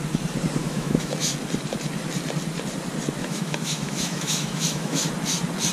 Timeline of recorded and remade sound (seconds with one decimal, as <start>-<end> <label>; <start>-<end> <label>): 0.0-0.6 recorded; 0.6-1.2 remade; 1.2-3.2 recorded; 3.2-5.1 remade; 5.1-5.7 recorded